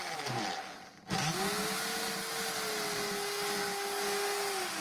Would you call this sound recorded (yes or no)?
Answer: yes